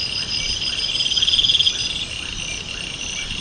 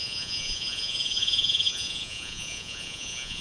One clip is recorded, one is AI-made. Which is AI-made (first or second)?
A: second